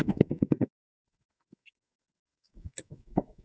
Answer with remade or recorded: remade